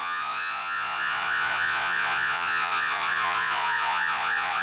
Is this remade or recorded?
remade